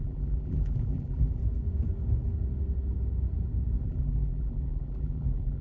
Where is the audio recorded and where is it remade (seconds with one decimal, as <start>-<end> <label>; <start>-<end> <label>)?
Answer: 0.0-1.4 remade; 1.4-3.8 recorded; 3.8-5.6 remade